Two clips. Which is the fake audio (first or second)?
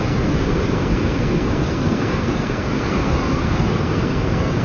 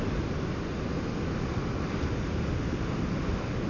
first